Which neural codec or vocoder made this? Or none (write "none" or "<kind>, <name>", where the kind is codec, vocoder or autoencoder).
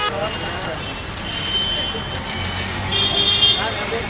none